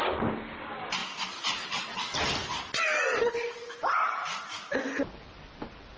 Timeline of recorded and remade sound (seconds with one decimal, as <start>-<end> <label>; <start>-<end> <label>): 0.0-6.0 recorded